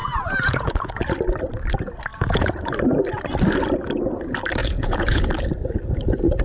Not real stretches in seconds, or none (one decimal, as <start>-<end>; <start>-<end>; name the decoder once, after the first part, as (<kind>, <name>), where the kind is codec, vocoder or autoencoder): 0.0-1.0 (vocoder, Vocos); 2.1-2.7; 4.6-5.1